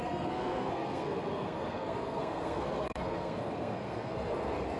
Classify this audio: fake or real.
fake